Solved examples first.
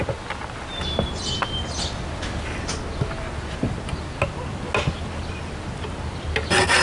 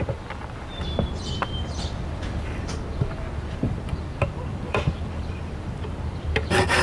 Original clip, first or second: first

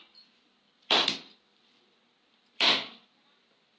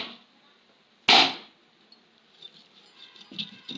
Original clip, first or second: second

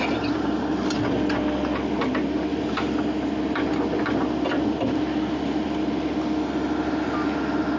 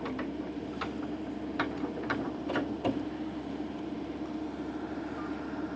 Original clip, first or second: first